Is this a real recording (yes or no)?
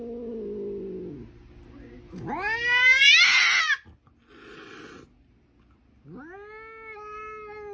yes